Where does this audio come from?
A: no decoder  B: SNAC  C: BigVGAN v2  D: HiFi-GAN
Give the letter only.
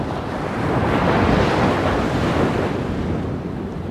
A